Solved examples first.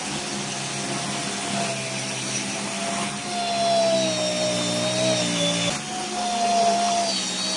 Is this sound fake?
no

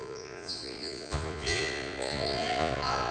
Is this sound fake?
yes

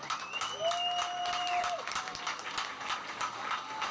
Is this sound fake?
no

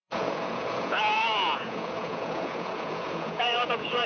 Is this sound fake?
yes